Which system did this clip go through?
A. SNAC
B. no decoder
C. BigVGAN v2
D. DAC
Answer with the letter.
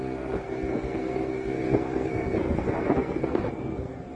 A